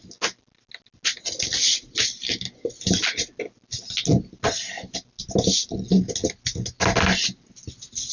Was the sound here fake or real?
real